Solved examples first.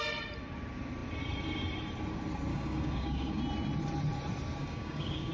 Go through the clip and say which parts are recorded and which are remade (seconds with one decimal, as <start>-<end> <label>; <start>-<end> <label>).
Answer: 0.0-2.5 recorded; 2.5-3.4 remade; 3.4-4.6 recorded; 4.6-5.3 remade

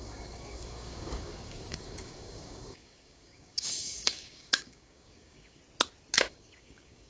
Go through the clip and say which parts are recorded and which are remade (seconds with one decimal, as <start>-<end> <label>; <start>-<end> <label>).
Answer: 0.0-5.6 remade; 5.6-6.2 recorded; 6.2-7.1 remade

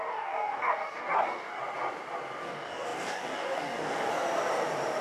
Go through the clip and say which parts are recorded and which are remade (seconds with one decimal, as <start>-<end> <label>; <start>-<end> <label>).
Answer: 0.0-1.6 remade; 1.6-2.4 recorded; 2.4-4.1 remade; 4.1-5.0 recorded

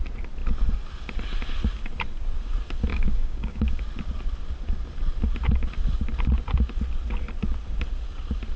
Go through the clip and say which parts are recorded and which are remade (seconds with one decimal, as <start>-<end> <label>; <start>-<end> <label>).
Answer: 0.0-2.9 recorded; 2.9-3.8 remade; 3.8-8.6 recorded